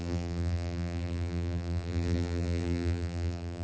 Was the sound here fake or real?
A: fake